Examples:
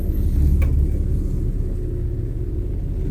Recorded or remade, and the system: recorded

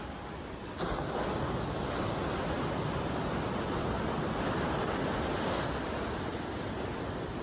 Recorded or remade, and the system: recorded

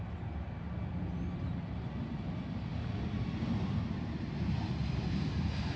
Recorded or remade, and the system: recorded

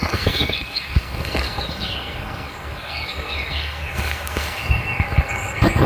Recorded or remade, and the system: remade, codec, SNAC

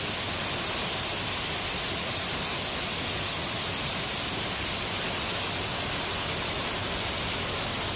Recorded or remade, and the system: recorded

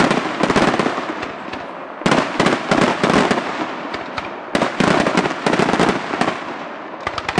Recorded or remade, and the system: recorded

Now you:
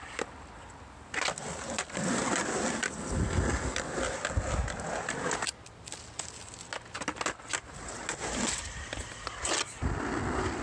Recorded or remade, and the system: recorded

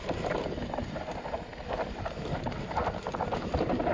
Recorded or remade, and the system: recorded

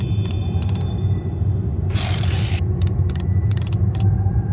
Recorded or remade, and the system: remade, vocoder, BigVGAN v2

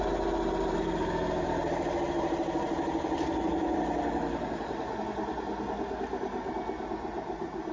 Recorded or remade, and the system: recorded